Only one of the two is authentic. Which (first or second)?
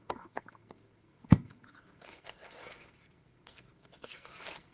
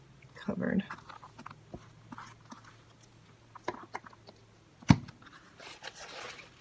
second